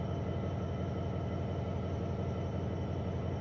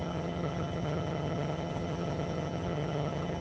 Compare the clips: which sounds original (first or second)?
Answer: first